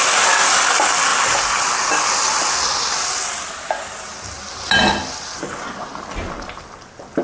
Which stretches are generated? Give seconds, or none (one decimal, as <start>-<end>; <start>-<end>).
none